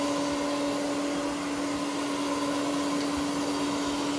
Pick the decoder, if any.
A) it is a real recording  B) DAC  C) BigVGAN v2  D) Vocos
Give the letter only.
A